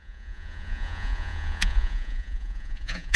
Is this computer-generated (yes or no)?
yes